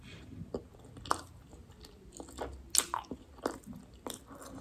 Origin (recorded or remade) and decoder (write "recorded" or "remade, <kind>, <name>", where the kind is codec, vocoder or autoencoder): recorded